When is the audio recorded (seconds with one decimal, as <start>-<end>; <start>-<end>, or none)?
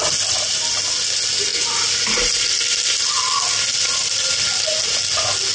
0.0-1.5; 3.0-5.5